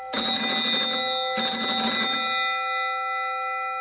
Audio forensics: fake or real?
real